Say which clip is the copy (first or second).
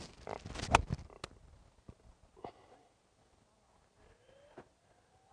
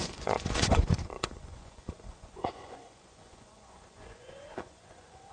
second